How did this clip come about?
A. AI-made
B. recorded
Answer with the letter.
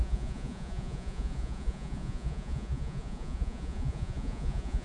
A